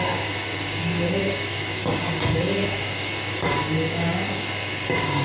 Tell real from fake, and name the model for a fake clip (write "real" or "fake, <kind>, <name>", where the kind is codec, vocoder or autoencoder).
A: fake, codec, DAC